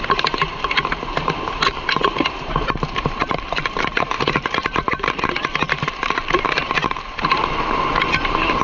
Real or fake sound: fake